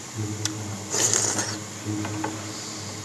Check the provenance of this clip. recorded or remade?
remade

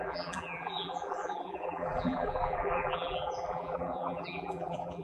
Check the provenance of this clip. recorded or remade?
remade